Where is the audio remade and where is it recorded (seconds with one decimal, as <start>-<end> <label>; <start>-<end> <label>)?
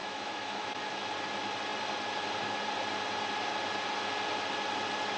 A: 0.0-1.1 remade; 1.1-5.2 recorded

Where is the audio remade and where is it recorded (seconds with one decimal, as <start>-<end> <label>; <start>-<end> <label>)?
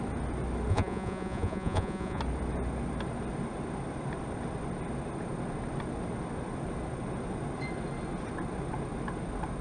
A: 0.0-0.7 recorded; 0.7-2.2 remade; 2.2-9.6 recorded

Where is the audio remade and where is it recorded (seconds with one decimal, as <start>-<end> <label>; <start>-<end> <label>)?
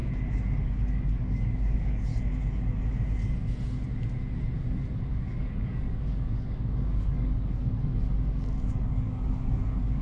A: 0.0-0.6 recorded; 0.6-2.1 remade; 2.1-5.1 recorded; 5.1-10.0 remade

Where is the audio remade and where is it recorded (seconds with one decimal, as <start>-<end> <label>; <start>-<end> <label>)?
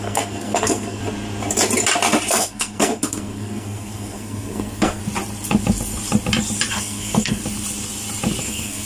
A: 0.0-1.0 remade; 1.0-2.3 recorded; 2.3-5.0 remade; 5.0-6.7 recorded; 6.7-7.4 remade; 7.4-8.4 recorded; 8.4-8.9 remade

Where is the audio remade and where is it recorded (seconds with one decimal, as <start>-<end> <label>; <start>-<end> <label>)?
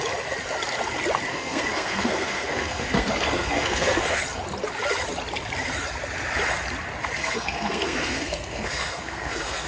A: 0.0-1.3 recorded; 1.3-4.2 remade; 4.2-7.2 recorded; 7.2-9.7 remade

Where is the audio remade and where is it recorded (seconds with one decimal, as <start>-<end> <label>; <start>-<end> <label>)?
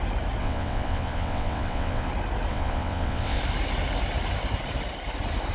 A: 0.0-0.4 recorded; 0.4-2.1 remade; 2.1-2.5 recorded; 2.5-3.4 remade; 3.4-5.5 recorded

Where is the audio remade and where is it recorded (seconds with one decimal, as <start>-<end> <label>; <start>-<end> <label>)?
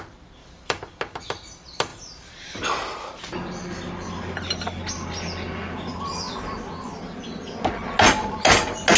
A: 0.0-0.4 recorded; 0.4-0.9 remade; 0.9-1.9 recorded; 1.9-3.2 remade; 3.2-9.0 recorded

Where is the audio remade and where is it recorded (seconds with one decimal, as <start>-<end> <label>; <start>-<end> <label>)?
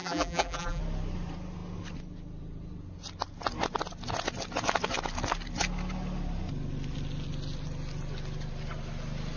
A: 0.0-0.8 remade; 0.8-9.4 recorded